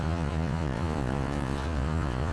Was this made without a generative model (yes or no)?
no